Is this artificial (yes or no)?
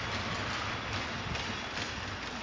no